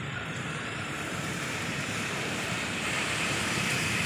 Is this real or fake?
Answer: fake